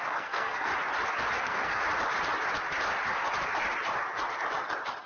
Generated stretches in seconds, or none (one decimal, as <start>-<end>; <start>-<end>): 0.0-0.7; 1.4-1.8